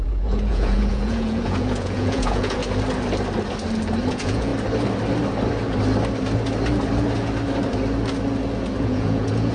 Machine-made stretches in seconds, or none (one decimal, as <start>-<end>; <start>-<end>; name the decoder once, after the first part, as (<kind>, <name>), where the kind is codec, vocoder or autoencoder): 0.0-2.6 (vocoder, Vocos); 4.1-4.5; 8.8-9.5